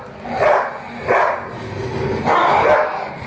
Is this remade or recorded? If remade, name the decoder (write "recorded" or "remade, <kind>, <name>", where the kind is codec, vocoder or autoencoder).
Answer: recorded